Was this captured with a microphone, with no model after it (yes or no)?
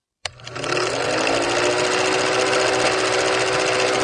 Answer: yes